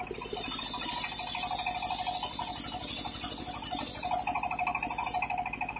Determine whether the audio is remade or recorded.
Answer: recorded